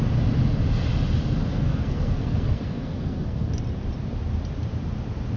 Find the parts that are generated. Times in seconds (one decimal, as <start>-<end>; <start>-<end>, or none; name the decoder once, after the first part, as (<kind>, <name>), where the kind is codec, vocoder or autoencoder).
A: 1.5-3.5 (codec, SNAC)